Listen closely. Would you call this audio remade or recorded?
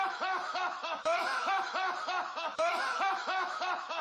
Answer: remade